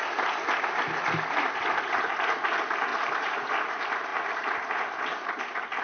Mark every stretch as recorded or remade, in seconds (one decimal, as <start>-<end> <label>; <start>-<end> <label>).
0.0-2.9 recorded; 2.9-3.5 remade; 3.5-4.1 recorded; 4.1-5.0 remade; 5.0-5.8 recorded